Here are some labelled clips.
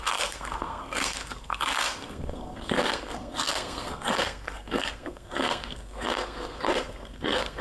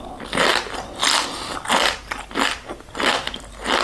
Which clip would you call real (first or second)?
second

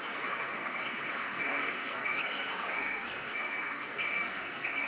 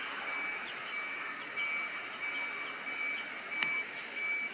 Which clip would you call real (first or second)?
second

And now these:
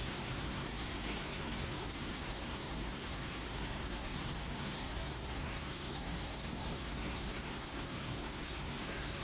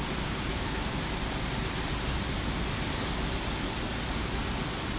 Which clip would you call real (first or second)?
second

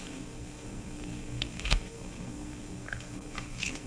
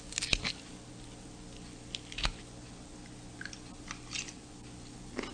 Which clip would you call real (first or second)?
second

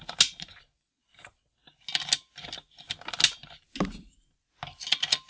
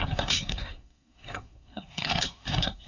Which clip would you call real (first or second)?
first